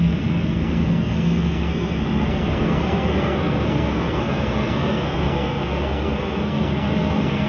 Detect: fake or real fake